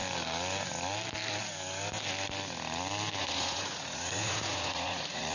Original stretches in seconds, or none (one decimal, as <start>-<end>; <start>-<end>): 0.0-3.2